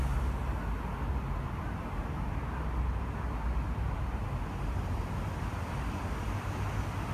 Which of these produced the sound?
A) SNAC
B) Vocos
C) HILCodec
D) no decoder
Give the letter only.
D